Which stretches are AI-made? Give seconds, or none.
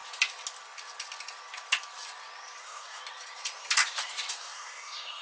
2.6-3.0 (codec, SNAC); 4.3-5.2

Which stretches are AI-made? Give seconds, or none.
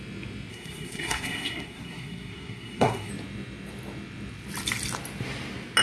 0.5-3.1 (codec, SNAC)